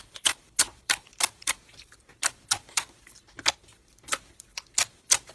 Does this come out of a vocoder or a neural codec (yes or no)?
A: yes